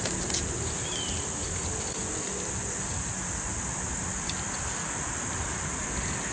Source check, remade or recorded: recorded